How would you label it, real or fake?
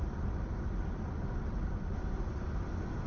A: real